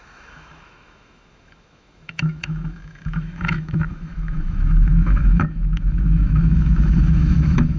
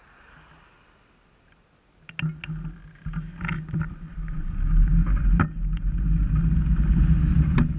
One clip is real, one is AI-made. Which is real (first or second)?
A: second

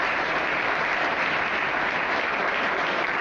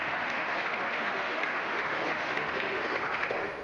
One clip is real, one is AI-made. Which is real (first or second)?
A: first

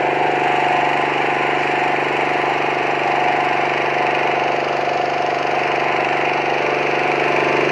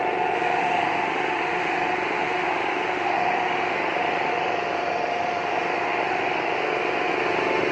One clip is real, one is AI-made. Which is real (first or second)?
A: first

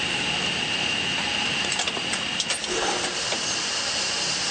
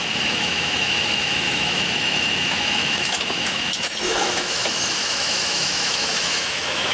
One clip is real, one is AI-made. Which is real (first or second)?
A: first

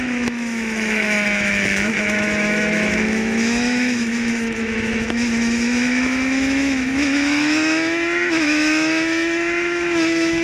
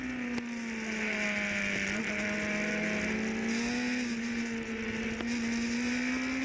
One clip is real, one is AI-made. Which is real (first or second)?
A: second